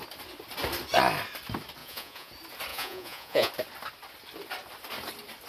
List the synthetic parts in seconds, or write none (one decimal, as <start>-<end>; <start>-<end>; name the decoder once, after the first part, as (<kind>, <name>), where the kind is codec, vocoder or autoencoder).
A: 1.8-2.3 (vocoder, Vocos); 2.7-3.5